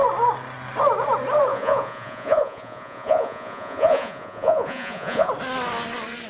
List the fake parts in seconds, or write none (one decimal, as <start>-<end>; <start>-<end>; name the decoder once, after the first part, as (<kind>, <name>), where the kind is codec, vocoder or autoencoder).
1.5-5.3 (vocoder, Vocos)